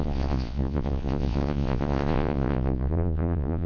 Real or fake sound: fake